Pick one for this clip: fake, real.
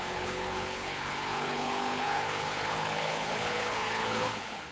fake